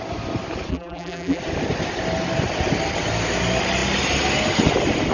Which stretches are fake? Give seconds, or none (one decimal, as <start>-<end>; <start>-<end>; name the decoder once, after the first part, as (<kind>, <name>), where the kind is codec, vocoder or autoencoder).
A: 0.7-1.4 (vocoder, BigVGAN v2)